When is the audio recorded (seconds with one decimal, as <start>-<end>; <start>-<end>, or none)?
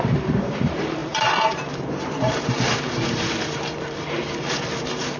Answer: none